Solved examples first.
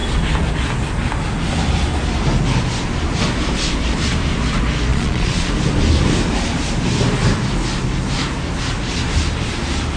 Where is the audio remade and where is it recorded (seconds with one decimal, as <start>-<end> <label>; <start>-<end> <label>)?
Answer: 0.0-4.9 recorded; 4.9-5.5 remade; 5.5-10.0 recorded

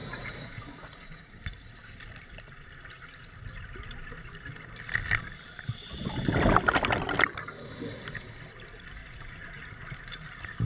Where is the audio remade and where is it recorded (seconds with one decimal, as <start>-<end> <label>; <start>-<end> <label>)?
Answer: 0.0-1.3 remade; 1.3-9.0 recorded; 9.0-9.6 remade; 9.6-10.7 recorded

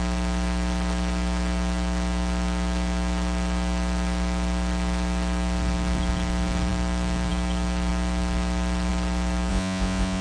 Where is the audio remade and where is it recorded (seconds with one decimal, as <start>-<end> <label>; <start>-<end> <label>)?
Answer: 0.0-9.5 recorded; 9.5-10.2 remade